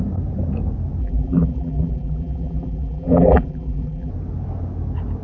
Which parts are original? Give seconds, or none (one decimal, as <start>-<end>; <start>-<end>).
0.0-1.0; 4.1-5.2